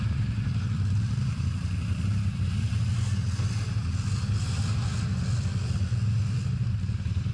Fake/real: real